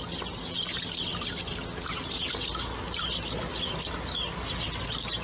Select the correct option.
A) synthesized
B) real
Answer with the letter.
B